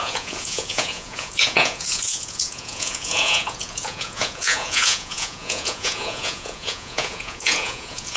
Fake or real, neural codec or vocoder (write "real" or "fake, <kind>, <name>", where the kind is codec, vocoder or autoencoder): fake, vocoder, Vocos